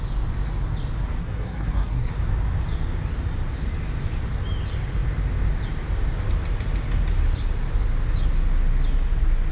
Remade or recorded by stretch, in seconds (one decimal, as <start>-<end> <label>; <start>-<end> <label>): 0.0-1.2 recorded; 1.2-2.1 remade; 2.1-9.5 recorded